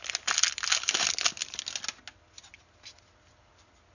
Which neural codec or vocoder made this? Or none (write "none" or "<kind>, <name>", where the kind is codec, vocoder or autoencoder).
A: none